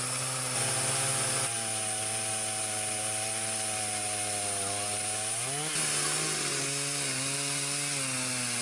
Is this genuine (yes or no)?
yes